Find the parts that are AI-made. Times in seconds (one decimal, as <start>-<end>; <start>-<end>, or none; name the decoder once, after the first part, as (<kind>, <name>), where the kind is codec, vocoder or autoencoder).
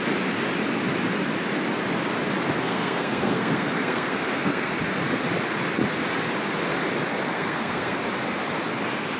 2.6-4.7 (codec, SNAC); 7.2-8.0